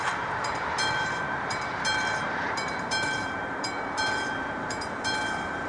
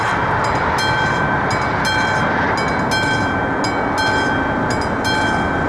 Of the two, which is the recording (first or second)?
second